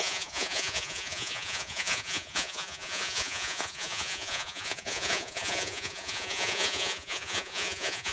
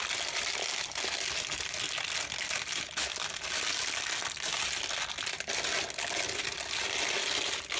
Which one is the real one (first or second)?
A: second